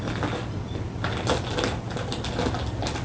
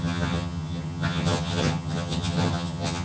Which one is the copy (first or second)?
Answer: second